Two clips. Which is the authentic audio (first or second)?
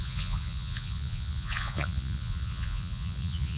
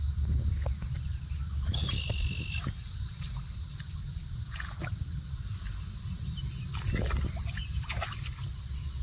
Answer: second